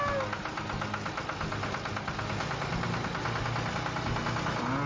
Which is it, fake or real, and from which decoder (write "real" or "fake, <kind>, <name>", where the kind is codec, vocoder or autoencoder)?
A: real